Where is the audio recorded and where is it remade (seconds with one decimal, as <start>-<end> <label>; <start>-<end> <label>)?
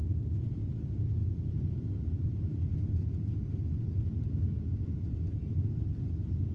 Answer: 0.0-6.5 recorded